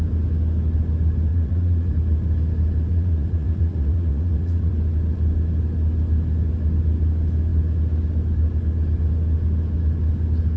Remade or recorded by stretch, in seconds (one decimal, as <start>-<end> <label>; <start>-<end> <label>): 0.0-1.3 recorded; 1.3-1.9 remade; 1.9-2.9 recorded; 2.9-4.7 remade; 4.7-10.6 recorded